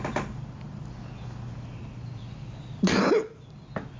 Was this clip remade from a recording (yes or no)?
no